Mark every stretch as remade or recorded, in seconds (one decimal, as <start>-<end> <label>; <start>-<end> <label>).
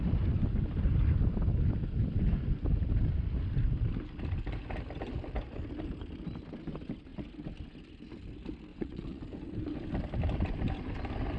0.0-8.7 recorded; 8.7-9.2 remade; 9.2-11.4 recorded